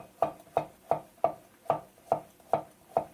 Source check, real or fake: real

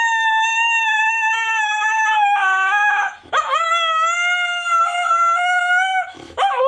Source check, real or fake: fake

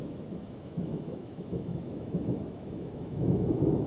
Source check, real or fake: fake